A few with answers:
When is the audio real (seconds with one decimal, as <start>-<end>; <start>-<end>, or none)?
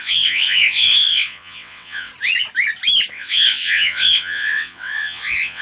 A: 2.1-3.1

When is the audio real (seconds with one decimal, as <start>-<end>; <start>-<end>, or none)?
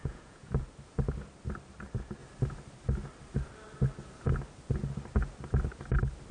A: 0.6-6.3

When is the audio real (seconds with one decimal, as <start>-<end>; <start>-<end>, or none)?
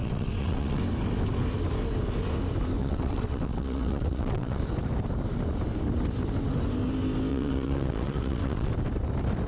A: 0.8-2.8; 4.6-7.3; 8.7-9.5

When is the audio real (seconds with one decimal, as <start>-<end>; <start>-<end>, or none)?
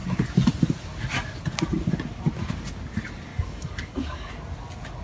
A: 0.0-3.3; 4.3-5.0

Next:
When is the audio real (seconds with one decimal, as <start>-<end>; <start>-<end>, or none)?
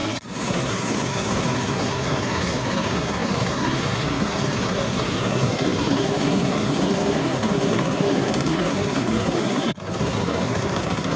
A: none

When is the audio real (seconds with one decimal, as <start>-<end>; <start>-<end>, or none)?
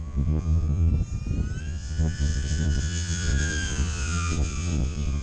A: 0.9-1.6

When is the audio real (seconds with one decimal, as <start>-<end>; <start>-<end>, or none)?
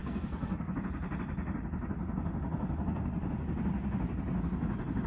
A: 0.7-5.1